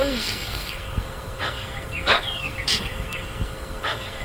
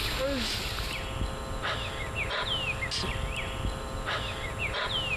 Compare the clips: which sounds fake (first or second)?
first